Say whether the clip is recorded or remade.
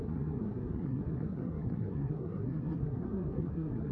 remade